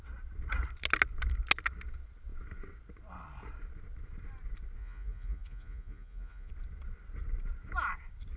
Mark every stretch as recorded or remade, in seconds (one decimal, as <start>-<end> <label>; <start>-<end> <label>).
0.0-4.8 recorded; 4.8-6.5 remade; 6.5-8.4 recorded